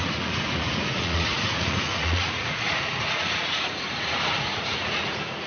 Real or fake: fake